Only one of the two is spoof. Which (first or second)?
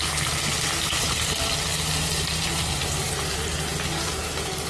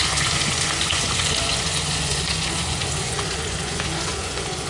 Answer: second